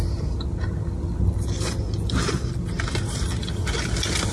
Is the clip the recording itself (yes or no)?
yes